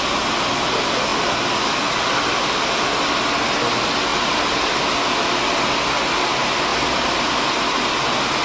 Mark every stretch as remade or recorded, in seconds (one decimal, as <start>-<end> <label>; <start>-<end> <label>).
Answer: 0.0-4.1 recorded; 4.1-4.8 remade; 4.8-6.7 recorded; 6.7-7.5 remade; 7.5-8.4 recorded